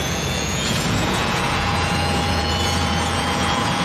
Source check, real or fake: fake